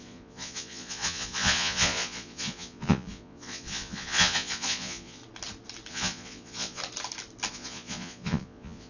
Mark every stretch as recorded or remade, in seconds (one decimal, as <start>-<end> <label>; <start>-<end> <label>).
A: 0.0-5.2 remade; 5.2-5.9 recorded; 5.9-6.8 remade; 6.8-7.5 recorded; 7.5-8.9 remade